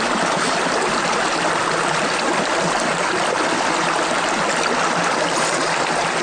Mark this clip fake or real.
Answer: real